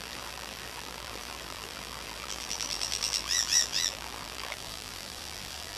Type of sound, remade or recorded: remade